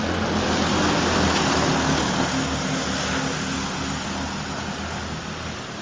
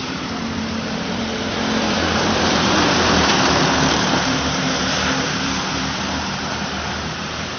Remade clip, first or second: second